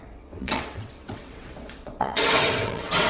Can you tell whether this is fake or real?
fake